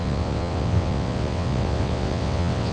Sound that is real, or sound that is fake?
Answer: fake